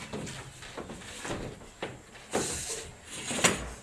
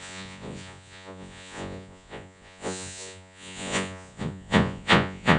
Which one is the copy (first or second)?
second